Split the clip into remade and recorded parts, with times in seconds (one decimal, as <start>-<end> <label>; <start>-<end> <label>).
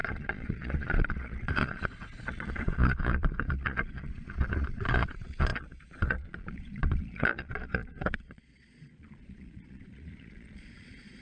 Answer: 0.0-11.2 remade